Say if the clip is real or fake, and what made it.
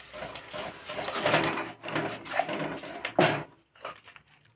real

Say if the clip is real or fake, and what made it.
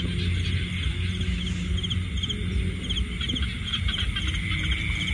real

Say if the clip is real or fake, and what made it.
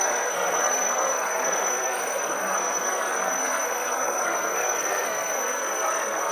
fake, codec, SNAC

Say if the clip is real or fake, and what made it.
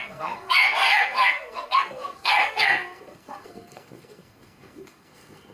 fake, codec, SNAC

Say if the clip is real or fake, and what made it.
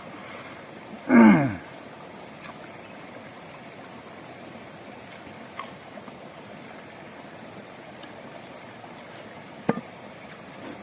real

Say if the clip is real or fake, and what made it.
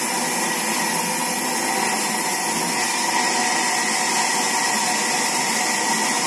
real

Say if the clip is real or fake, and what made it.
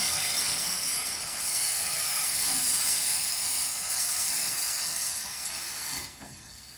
fake, codec, SNAC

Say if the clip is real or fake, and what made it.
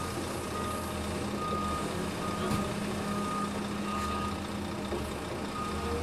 real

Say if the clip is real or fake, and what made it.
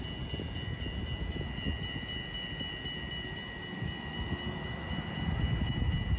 real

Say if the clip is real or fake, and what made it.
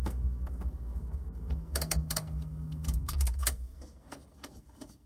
fake, codec, SNAC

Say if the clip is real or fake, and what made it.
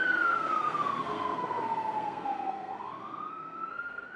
fake, codec, SNAC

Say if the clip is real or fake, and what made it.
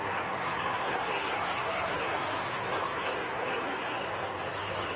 fake, codec, SNAC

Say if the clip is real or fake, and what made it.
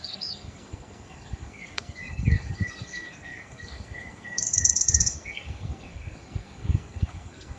fake, codec, SNAC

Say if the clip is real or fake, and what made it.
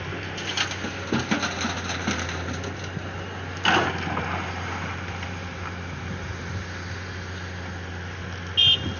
real